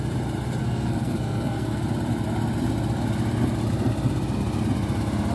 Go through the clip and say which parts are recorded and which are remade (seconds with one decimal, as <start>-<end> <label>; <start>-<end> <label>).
0.0-0.6 recorded; 0.6-1.8 remade; 1.8-5.3 recorded